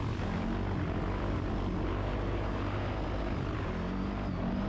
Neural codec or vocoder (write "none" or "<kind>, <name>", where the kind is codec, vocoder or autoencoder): none